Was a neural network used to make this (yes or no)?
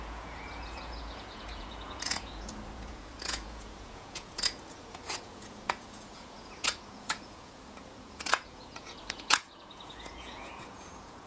yes